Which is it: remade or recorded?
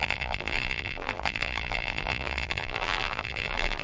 remade